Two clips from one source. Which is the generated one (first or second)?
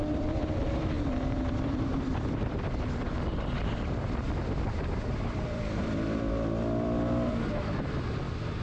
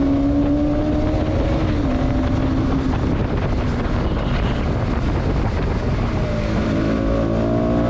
first